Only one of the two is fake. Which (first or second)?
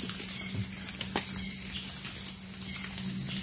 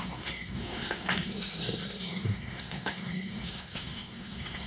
second